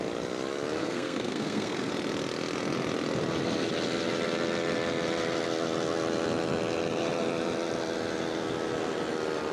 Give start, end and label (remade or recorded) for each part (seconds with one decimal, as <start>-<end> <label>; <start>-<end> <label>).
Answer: 0.0-0.8 recorded; 0.8-1.9 remade; 1.9-9.5 recorded